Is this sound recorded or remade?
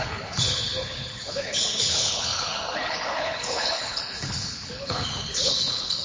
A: remade